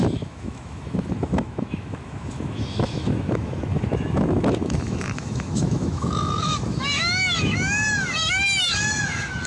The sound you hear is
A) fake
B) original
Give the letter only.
A